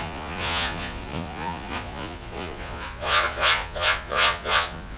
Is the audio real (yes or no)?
no